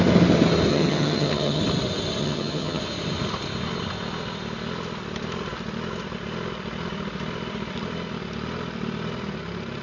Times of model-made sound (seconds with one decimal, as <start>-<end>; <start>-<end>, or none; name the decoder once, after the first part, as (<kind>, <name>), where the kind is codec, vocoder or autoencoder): 0.7-1.6 (vocoder, HiFi-GAN); 2.2-2.8